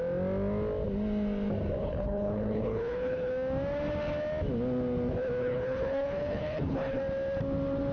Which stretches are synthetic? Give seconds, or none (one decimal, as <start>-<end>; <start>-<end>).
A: 1.8-3.3; 5.4-7.0